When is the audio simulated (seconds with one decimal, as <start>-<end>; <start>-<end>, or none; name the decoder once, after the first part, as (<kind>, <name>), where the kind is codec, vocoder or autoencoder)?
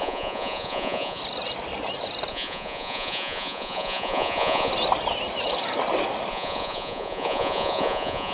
0.0-1.2 (vocoder, Vocos); 2.3-4.7; 6.3-8.3